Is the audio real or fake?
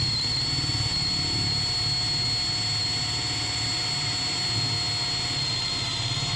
real